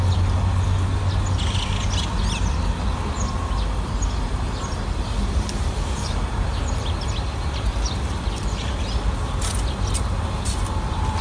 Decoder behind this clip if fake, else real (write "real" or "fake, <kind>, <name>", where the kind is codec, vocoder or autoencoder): real